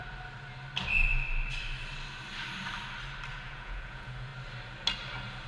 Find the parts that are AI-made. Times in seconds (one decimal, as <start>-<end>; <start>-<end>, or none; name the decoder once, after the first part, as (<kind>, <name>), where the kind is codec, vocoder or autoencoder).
3.3-4.3 (vocoder, Vocos)